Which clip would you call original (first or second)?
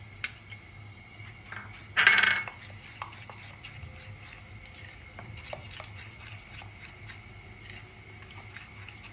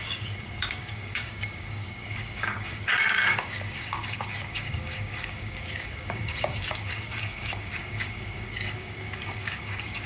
first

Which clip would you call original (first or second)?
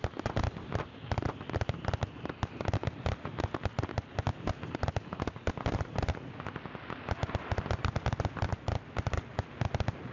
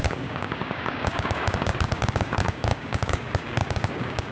first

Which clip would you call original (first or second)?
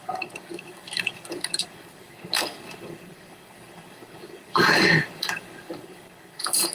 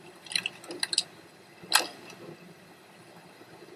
second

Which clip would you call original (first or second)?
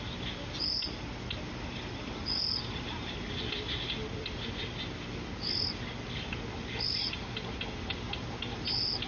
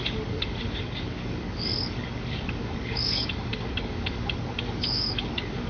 first